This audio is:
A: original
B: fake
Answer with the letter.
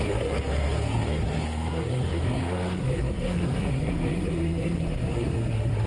B